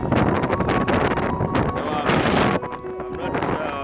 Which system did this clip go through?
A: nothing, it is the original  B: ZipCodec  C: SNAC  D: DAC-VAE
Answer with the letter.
A